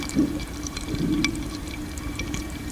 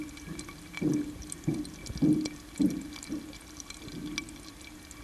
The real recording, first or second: second